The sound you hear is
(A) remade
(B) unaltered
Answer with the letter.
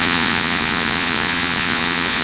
A